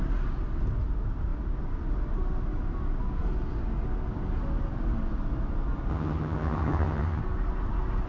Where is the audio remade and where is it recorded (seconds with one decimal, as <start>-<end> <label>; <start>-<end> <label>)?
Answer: 0.0-5.9 recorded; 5.9-7.2 remade; 7.2-8.1 recorded